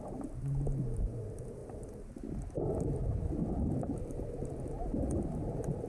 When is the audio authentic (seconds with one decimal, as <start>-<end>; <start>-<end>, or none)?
1.6-2.5; 3.4-4.0